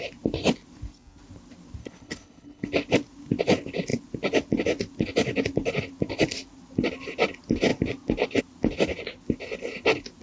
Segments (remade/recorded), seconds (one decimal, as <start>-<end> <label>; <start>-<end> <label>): 0.0-1.8 recorded; 1.8-2.7 remade; 2.7-10.2 recorded